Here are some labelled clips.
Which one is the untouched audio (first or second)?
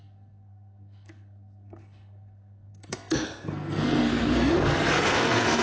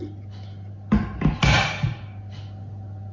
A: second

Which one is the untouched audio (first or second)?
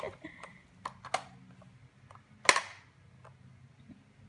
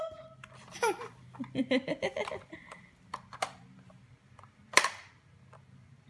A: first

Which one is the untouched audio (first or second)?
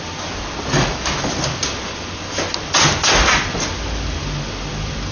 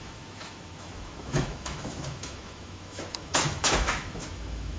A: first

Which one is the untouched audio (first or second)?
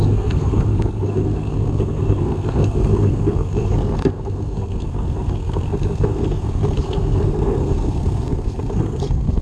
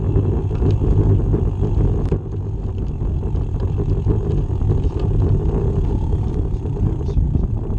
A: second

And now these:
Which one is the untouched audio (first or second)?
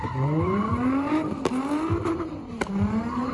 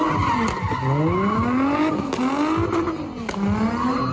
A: second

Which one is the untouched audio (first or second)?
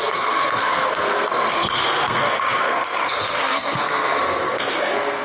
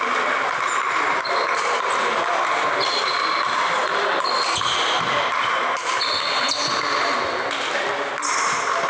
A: second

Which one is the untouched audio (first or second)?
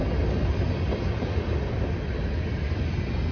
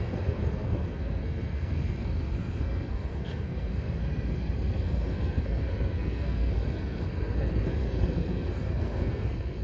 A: first